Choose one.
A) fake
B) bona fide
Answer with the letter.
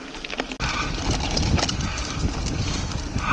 B